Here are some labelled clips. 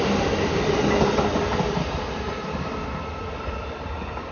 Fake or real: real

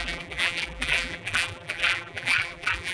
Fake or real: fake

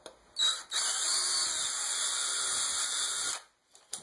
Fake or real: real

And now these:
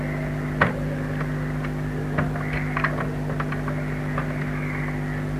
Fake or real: fake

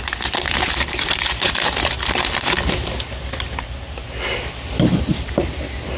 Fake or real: real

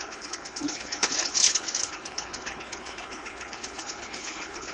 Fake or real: fake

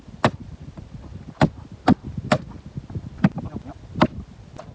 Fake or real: real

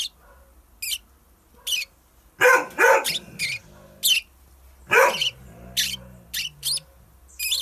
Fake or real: real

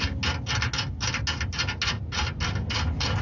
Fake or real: real